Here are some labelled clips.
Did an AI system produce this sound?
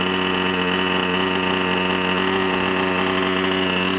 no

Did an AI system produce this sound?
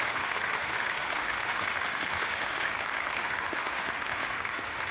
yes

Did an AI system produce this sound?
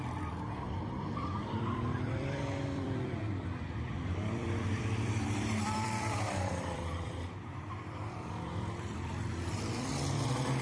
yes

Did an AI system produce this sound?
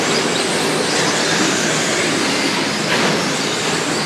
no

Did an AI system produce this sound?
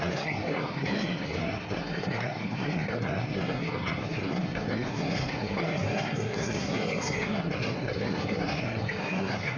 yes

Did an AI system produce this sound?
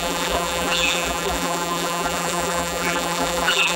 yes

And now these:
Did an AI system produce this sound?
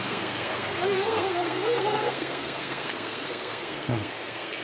yes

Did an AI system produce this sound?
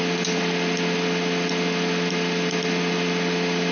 no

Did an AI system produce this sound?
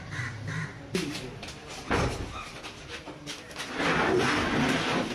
yes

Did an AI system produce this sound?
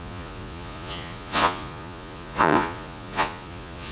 yes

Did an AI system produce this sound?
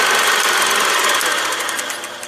no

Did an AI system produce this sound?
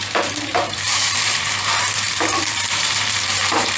yes